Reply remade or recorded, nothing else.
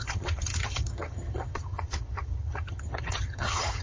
remade